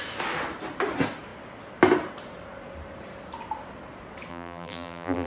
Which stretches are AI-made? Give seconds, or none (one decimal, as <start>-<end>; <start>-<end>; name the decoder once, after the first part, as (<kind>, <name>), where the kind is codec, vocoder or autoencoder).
4.3-5.3 (vocoder, BigVGAN v2)